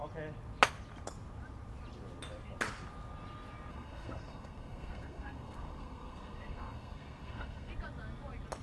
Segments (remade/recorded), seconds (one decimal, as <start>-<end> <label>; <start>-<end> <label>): 0.0-3.7 recorded; 3.7-7.7 remade; 7.7-8.6 recorded